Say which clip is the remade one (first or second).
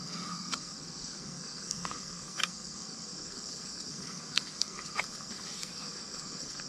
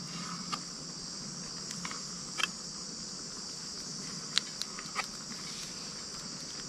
first